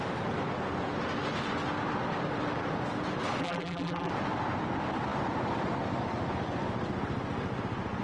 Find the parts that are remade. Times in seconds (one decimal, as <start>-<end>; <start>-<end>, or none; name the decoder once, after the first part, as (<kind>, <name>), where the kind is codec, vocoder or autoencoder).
3.4-4.1 (vocoder, BigVGAN v2)